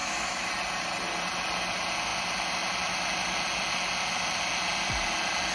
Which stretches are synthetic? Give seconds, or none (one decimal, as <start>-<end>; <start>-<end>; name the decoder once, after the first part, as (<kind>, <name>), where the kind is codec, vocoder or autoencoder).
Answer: 0.0-0.5 (autoencoder, DAC-VAE)